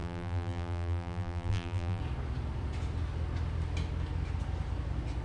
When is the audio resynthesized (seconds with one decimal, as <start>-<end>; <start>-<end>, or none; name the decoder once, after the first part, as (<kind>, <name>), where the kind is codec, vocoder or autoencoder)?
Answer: 0.0-2.0 (vocoder, BigVGAN v2)